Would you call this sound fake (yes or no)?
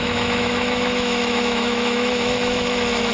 yes